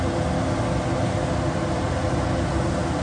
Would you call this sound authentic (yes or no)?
yes